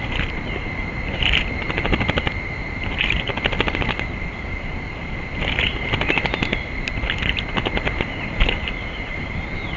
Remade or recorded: recorded